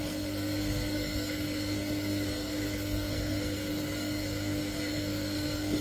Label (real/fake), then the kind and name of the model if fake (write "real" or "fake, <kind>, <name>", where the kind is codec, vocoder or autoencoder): fake, codec, SNAC